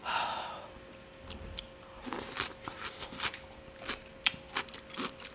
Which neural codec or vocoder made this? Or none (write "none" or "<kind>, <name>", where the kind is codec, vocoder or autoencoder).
none